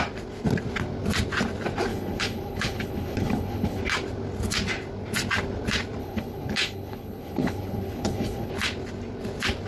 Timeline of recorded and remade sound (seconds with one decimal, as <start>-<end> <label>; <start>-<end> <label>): 0.0-1.9 recorded; 1.9-3.8 remade; 3.8-6.0 recorded; 6.0-8.5 remade; 8.5-9.7 recorded

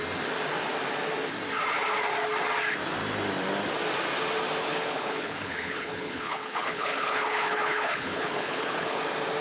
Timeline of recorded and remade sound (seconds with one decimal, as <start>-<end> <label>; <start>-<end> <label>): 0.0-4.6 recorded; 4.6-9.0 remade; 9.0-9.4 recorded

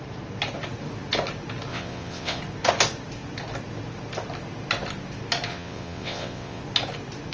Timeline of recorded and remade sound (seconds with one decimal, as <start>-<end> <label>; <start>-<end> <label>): 0.0-1.7 recorded; 1.7-2.4 remade; 2.4-5.5 recorded; 5.5-6.6 remade; 6.6-7.3 recorded

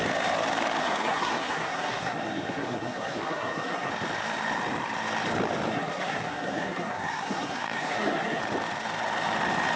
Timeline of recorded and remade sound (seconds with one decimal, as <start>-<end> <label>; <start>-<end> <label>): 0.0-0.8 recorded; 0.8-3.9 remade; 3.9-5.7 recorded; 5.7-8.4 remade; 8.4-9.8 recorded